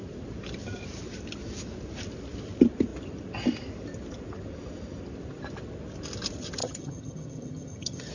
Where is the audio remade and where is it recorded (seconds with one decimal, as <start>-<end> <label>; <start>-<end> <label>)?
0.0-6.6 recorded; 6.6-8.1 remade